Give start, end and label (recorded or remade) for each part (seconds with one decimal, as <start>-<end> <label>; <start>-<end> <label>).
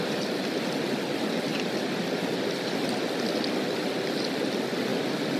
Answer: 0.0-5.4 recorded